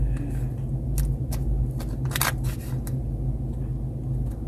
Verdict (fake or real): real